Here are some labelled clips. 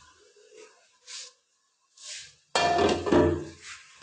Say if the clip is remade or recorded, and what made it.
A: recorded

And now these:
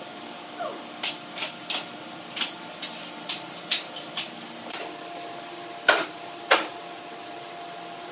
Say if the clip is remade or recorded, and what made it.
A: recorded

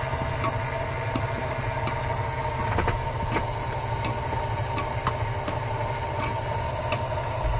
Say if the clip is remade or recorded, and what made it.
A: recorded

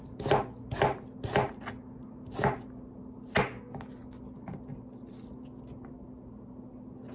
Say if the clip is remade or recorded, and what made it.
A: recorded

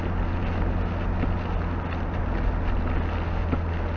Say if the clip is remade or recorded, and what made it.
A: recorded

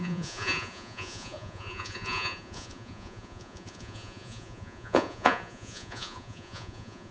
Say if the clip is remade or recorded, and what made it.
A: remade, vocoder, Vocos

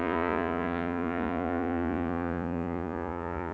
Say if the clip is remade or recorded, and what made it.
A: remade, vocoder, Vocos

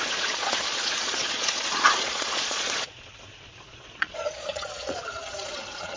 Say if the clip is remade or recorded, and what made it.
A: remade, vocoder, Vocos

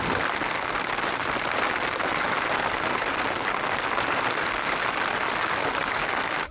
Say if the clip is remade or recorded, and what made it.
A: recorded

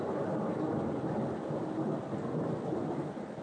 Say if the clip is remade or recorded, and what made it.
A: recorded